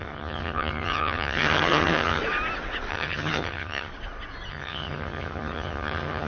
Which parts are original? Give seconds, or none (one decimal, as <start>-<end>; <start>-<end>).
2.2-2.9; 3.9-4.5